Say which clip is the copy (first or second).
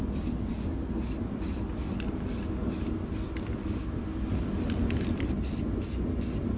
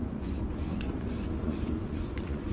second